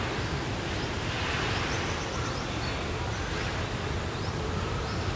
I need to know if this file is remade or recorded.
recorded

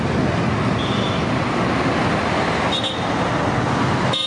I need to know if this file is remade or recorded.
recorded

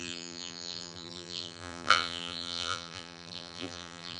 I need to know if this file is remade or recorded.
remade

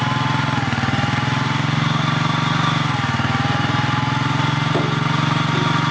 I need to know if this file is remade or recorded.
recorded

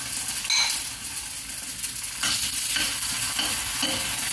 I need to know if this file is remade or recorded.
recorded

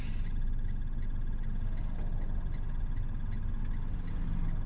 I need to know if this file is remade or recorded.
recorded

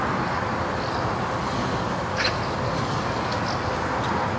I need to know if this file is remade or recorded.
recorded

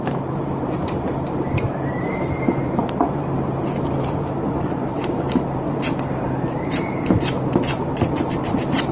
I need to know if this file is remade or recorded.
remade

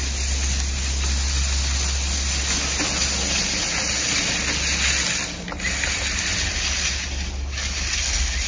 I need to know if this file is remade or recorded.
recorded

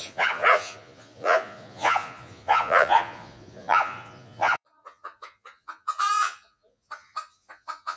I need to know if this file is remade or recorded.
remade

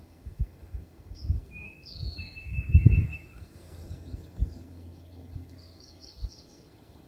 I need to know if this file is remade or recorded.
remade